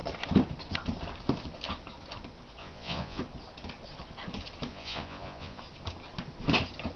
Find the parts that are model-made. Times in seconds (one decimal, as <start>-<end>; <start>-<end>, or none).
2.6-3.2; 4.7-5.6